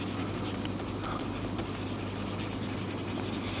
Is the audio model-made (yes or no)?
no